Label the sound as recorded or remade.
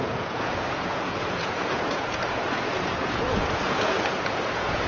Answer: remade